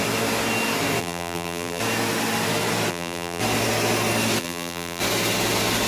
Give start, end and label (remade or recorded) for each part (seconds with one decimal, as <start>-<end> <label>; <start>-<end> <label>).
0.0-1.0 recorded; 1.0-1.8 remade; 1.8-2.9 recorded; 2.9-3.4 remade; 3.4-4.4 recorded; 4.4-5.0 remade; 5.0-5.9 recorded